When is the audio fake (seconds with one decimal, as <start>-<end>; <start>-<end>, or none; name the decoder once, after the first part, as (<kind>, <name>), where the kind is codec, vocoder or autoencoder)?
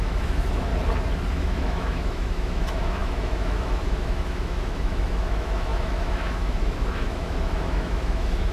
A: 0.0-0.7 (autoencoder, DAC-VAE); 1.3-8.5